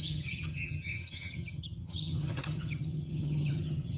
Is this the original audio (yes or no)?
no